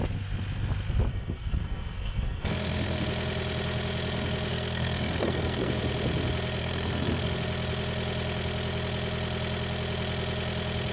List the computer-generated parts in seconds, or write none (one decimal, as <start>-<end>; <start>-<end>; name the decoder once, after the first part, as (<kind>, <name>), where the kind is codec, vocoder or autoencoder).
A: 1.1-3.0 (codec, SNAC); 4.5-5.7; 6.6-7.3